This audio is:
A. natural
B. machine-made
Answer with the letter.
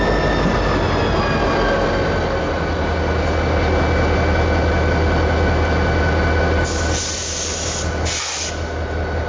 A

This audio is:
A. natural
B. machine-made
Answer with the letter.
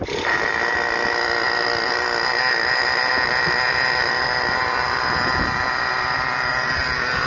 A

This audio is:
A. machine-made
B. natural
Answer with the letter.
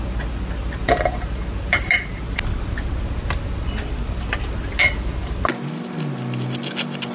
B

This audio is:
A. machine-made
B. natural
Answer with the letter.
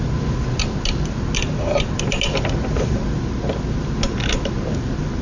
B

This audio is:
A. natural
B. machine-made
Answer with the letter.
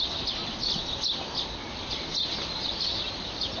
A